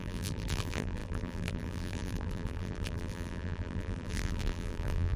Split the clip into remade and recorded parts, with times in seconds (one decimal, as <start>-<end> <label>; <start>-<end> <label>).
0.0-5.2 remade